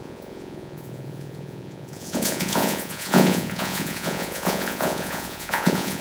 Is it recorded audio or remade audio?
remade